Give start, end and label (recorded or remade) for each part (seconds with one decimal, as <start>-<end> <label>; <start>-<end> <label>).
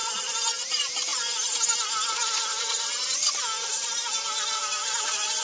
0.0-1.1 remade; 1.1-3.7 recorded; 3.7-5.4 remade